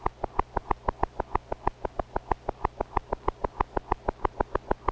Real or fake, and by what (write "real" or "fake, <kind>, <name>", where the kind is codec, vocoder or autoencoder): real